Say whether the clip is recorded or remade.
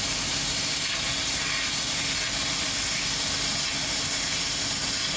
recorded